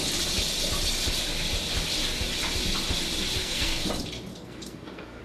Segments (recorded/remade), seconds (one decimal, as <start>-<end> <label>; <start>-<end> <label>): 0.0-3.4 recorded; 3.4-3.9 remade; 3.9-4.3 recorded; 4.3-5.2 remade